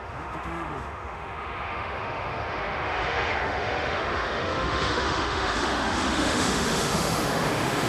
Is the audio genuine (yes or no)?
no